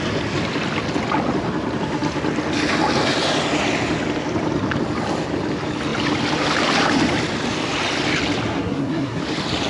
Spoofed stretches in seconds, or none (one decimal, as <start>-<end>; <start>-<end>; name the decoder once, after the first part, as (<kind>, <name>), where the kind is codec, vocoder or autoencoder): 8.5-9.2 (codec, SNAC)